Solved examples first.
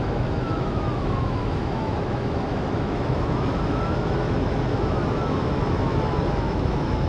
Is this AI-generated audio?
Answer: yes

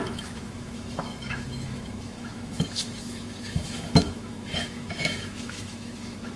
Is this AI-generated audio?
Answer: yes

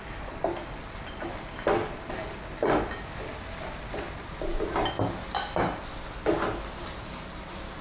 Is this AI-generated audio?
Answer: no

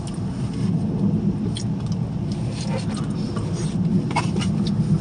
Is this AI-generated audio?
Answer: no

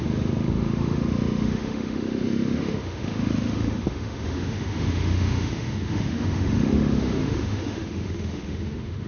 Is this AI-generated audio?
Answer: yes